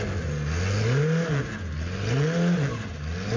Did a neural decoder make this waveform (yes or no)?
no